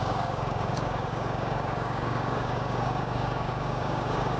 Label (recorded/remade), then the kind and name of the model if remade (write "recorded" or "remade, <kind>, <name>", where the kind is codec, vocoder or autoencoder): remade, codec, DAC